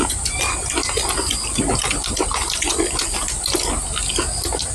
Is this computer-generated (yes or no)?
no